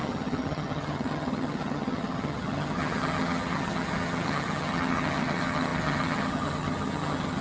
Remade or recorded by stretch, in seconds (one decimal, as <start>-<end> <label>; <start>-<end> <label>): 0.0-7.4 remade